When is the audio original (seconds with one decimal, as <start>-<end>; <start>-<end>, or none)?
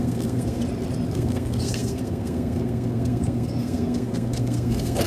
0.6-1.1